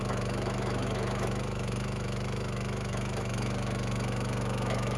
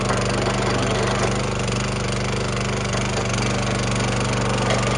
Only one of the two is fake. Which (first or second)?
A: first